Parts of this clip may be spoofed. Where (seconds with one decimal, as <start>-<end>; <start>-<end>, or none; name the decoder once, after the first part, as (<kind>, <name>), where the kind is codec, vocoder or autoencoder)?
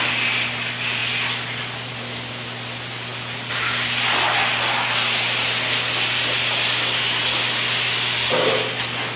none